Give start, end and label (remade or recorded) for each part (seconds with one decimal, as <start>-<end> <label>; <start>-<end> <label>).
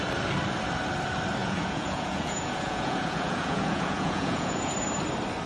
0.0-1.4 recorded; 1.4-4.7 remade; 4.7-5.5 recorded